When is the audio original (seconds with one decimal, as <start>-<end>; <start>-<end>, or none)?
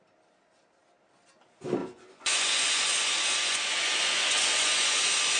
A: 0.0-1.8; 5.0-5.4